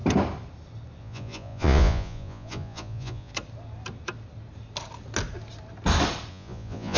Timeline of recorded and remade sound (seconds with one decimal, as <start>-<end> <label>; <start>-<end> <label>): 0.0-1.0 recorded; 1.0-3.3 remade; 3.3-6.3 recorded; 6.3-7.0 remade